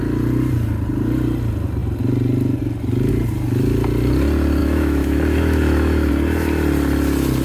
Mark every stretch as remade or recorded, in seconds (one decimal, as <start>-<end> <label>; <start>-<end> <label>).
0.0-4.6 recorded; 4.6-6.1 remade; 6.1-7.4 recorded